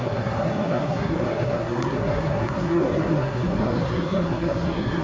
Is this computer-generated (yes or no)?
yes